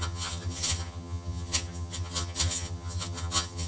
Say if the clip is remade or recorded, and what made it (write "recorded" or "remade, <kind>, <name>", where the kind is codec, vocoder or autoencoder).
remade, vocoder, HiFi-GAN